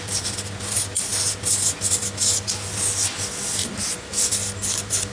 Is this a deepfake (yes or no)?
no